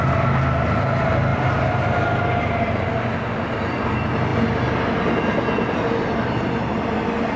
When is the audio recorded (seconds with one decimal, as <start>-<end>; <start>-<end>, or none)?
0.0-7.4